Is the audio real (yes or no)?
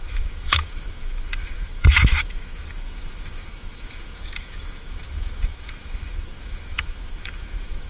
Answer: no